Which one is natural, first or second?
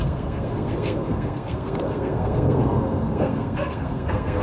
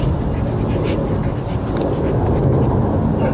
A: second